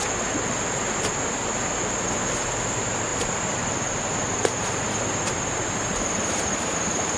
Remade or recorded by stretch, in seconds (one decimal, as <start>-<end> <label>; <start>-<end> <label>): 0.0-3.1 recorded; 3.1-7.2 remade